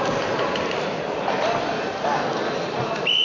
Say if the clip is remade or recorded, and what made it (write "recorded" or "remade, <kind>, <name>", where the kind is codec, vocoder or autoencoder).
recorded